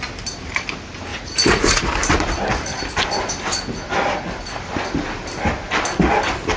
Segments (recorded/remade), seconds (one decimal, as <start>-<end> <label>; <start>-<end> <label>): 0.0-1.1 recorded; 1.1-1.8 remade; 1.8-6.6 recorded